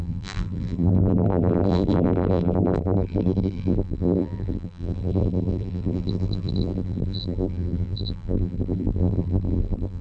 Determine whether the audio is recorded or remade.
remade